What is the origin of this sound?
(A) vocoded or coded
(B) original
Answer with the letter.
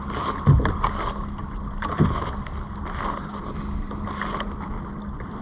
B